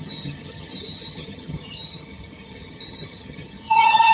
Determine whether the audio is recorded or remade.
remade